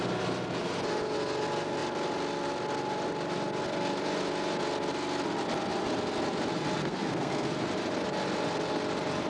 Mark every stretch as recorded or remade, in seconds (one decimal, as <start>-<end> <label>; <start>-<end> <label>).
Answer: 0.0-6.8 recorded; 6.8-7.5 remade; 7.5-9.3 recorded